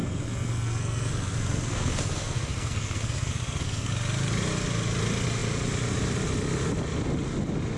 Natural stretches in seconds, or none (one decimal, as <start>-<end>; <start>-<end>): 3.9-7.8